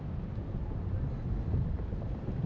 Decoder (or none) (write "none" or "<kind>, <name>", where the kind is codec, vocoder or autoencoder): none